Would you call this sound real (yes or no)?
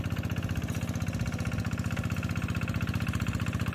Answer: yes